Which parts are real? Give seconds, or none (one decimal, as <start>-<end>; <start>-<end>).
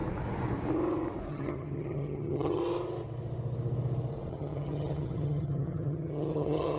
0.0-1.3; 2.6-4.3